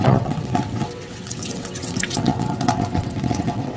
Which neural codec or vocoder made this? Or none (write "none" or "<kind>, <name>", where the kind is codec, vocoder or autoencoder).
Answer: vocoder, WaveNeXt